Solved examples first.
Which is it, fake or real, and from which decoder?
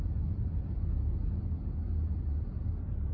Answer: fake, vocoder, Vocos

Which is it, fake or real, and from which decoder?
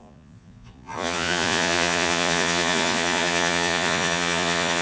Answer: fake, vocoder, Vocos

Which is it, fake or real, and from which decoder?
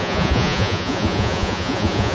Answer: fake, vocoder, Vocos